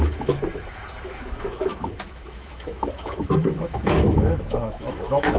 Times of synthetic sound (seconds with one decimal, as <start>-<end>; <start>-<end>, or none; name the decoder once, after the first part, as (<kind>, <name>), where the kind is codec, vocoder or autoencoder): 0.0-5.4 (autoencoder, DAC-VAE)